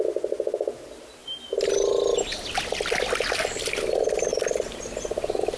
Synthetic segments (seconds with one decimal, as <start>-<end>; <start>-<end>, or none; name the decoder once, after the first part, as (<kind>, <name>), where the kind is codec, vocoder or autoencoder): none